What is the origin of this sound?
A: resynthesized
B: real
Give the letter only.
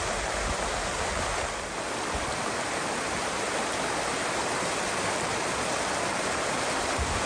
B